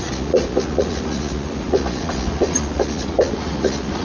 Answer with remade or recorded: remade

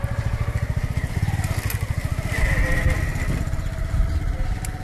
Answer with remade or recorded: recorded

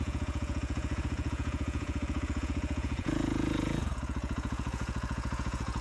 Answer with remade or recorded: remade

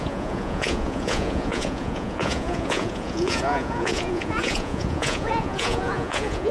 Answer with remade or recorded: remade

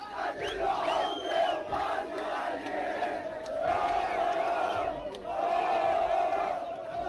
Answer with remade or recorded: remade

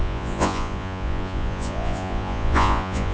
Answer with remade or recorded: remade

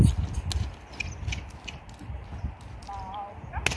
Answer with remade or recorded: recorded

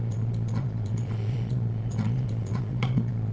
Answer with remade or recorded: remade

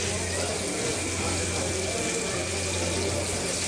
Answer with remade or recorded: recorded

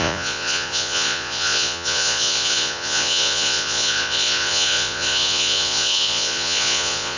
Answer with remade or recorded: remade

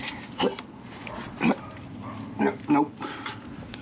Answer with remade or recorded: recorded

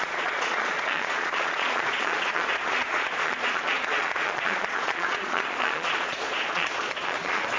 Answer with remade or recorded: remade